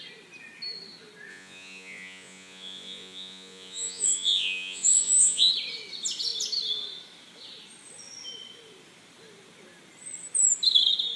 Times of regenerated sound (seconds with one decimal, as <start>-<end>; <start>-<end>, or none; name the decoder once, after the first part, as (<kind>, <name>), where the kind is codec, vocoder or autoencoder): 1.3-5.5 (vocoder, Vocos)